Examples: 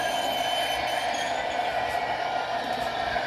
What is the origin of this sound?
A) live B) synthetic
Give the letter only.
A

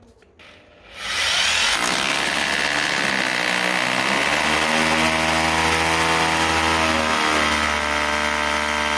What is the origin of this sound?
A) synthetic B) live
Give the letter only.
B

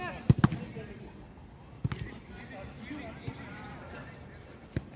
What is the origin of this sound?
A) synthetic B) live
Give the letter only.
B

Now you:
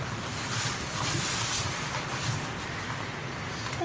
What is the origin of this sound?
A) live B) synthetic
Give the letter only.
A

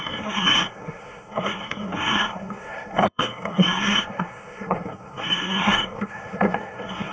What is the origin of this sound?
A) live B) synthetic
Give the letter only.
B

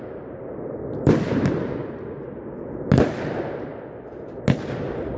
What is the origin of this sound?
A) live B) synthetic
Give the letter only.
A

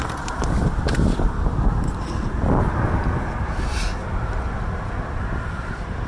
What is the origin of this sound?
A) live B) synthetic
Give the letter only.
A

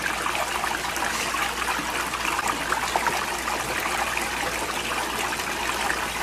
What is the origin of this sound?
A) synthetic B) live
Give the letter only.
B